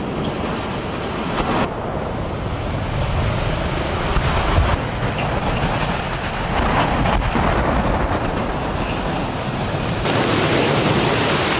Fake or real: real